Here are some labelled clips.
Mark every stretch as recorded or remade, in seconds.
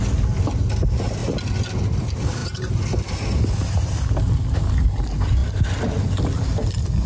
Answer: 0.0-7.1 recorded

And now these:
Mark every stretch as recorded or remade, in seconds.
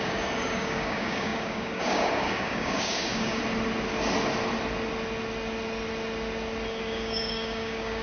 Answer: 0.0-3.4 remade; 3.4-6.7 recorded; 6.7-8.0 remade